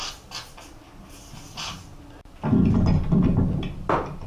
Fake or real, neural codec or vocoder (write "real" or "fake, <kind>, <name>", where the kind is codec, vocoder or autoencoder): real